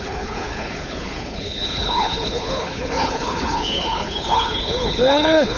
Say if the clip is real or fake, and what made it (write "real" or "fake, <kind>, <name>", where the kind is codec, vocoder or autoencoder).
fake, codec, HILCodec